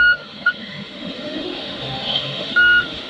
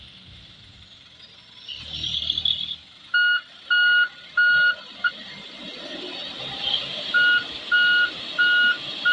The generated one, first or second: first